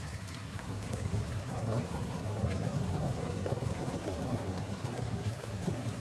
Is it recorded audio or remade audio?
remade